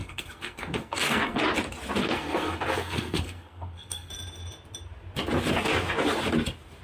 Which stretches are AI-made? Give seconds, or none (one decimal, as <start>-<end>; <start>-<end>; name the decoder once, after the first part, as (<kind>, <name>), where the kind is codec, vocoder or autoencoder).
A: 0.0-1.4 (codec, SNAC); 2.0-4.1